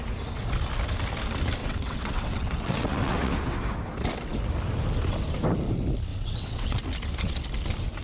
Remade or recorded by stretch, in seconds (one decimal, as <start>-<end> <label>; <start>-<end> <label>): 0.0-1.6 recorded; 1.6-3.3 remade; 3.3-6.1 recorded; 6.1-6.8 remade; 6.8-8.0 recorded